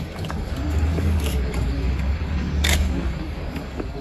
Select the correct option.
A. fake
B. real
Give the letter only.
A